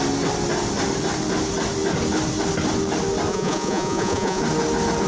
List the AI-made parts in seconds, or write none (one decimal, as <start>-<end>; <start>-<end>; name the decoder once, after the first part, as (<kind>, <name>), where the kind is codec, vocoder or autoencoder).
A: 3.3-4.4 (vocoder, Vocos)